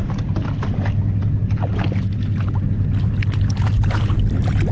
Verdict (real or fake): real